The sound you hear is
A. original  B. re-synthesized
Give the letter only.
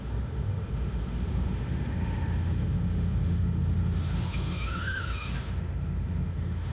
B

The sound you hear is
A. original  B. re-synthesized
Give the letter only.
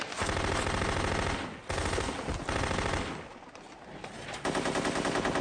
A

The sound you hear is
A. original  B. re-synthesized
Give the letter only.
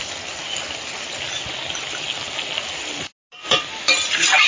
A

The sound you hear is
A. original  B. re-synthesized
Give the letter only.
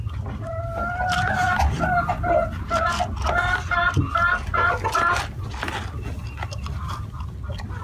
A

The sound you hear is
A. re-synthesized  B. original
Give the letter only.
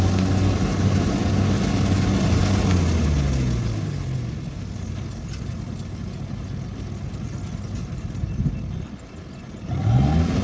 B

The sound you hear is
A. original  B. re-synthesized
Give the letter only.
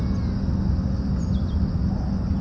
A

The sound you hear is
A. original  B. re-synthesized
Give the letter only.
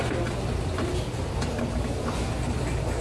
A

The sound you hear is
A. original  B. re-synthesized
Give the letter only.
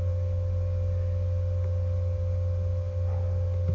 A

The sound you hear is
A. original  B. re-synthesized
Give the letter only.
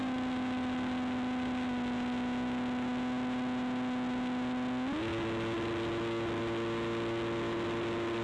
A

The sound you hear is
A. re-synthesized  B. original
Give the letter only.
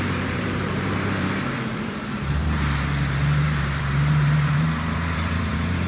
A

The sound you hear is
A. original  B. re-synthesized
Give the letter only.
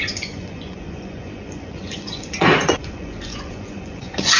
B